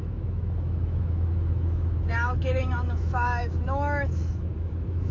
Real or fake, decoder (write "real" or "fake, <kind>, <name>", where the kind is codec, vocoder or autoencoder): fake, autoencoder, DAC-VAE